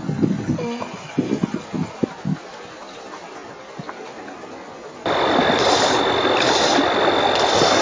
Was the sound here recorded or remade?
recorded